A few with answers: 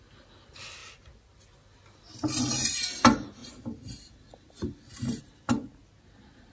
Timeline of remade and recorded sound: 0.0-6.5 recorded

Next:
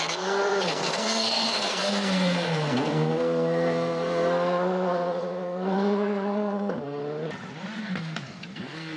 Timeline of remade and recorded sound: 0.0-7.0 remade; 7.0-7.8 recorded; 7.8-9.0 remade

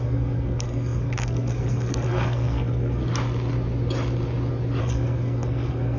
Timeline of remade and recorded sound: 0.0-3.0 remade; 3.0-4.8 recorded; 4.8-6.0 remade

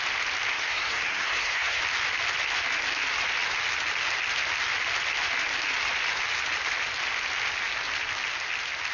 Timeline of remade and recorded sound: 0.0-0.5 recorded; 0.5-1.8 remade; 1.8-8.9 recorded

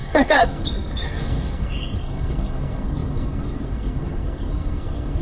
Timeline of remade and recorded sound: 0.0-5.2 remade